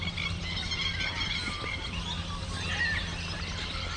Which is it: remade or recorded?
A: recorded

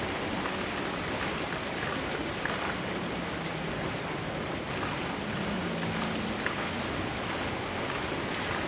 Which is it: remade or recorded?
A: recorded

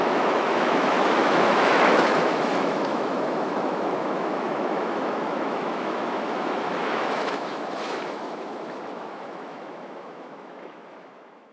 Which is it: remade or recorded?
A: remade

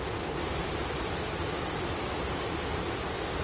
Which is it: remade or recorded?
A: recorded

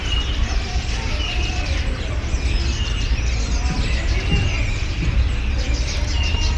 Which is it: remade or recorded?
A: recorded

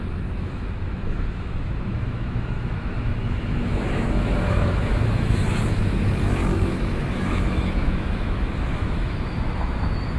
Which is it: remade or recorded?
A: remade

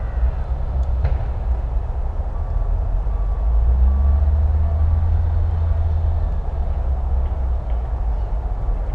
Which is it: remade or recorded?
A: recorded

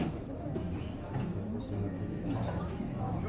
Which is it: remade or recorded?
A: remade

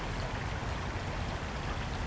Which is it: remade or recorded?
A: recorded